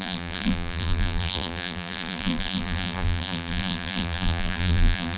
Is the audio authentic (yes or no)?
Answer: no